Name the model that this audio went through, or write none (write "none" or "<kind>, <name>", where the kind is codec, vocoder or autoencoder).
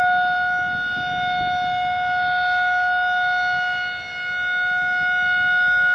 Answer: none